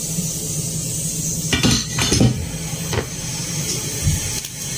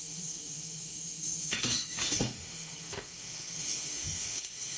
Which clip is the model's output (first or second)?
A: second